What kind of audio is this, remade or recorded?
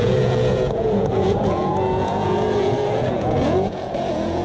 remade